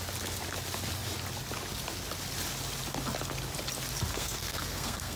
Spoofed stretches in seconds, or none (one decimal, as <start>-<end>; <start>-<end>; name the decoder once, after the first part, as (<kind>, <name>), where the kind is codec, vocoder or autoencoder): 4.1-5.2 (codec, SNAC)

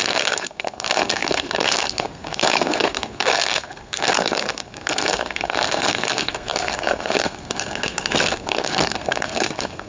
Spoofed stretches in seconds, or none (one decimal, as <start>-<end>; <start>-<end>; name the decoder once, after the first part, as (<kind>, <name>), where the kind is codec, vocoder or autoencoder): 0.0-9.9 (codec, SNAC)

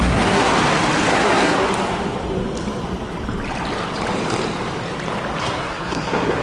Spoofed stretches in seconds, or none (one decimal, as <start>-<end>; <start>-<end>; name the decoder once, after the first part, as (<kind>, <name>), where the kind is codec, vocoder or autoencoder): 0.0-0.5 (codec, SNAC); 1.1-1.6; 5.4-6.4